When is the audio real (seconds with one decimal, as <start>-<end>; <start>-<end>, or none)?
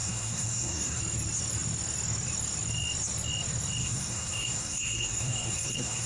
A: 1.0-3.8